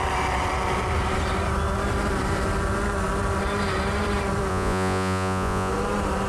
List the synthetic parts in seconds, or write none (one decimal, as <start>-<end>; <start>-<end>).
4.5-5.7